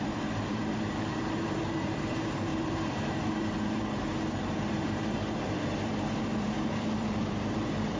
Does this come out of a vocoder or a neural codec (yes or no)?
yes